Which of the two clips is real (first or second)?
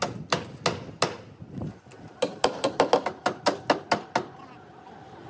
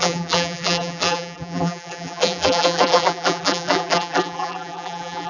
first